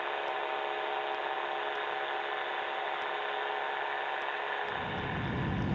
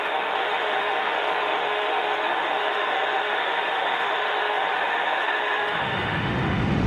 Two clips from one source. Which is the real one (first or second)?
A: first